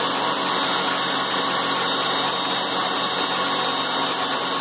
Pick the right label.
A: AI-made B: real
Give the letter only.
B